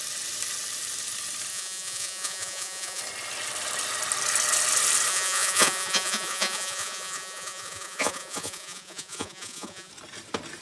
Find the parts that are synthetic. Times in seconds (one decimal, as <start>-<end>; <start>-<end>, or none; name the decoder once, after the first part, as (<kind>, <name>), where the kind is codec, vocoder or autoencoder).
1.5-3.0 (vocoder, Vocos); 5.1-9.9

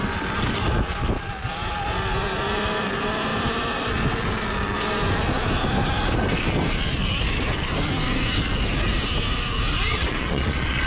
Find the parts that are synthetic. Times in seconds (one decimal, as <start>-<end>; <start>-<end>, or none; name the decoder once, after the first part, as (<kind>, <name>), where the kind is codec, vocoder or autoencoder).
9.9-10.9 (vocoder, Vocos)